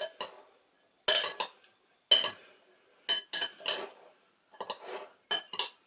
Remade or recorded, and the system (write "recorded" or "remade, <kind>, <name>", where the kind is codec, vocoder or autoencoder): recorded